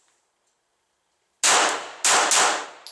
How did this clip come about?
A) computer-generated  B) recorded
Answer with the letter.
B